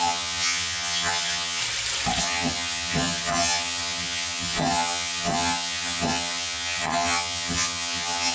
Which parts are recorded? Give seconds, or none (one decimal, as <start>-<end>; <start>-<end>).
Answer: 1.6-2.2